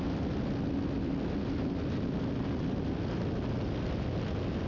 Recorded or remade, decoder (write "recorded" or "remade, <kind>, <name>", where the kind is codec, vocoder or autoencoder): recorded